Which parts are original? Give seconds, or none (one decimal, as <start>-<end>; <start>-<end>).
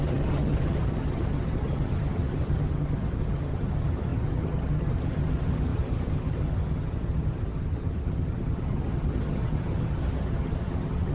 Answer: none